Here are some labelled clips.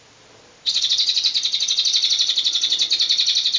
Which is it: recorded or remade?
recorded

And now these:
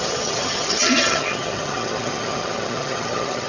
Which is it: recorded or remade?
remade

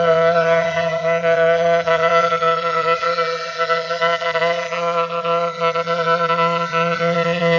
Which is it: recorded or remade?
remade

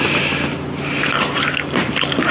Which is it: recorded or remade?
recorded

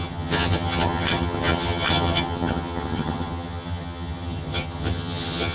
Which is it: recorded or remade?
remade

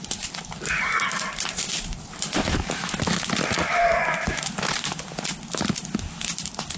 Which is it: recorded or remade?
recorded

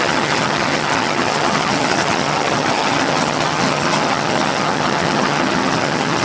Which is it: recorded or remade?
remade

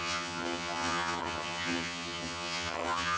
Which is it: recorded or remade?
remade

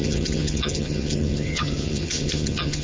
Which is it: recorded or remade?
remade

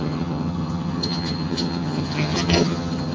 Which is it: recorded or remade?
remade